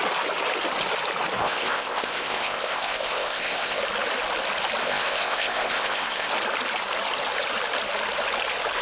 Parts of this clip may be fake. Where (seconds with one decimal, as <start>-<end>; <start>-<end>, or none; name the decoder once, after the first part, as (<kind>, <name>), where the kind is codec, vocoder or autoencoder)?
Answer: 1.4-3.8 (codec, ZipCodec); 4.8-6.3